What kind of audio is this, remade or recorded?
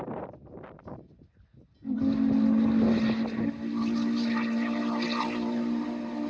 recorded